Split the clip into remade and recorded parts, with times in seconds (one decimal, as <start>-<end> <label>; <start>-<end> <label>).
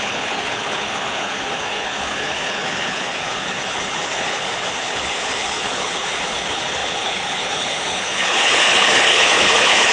0.0-9.9 remade